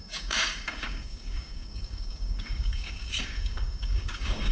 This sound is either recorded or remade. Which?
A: remade